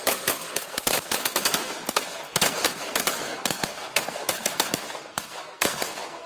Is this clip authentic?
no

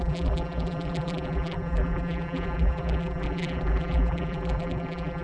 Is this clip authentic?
no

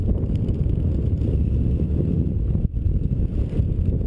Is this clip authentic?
no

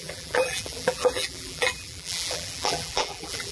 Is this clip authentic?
no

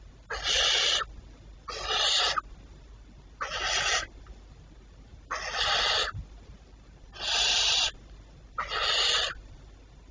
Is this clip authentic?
yes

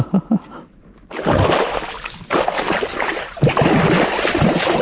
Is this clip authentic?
yes